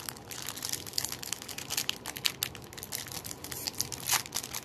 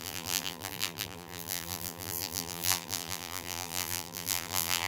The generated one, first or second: second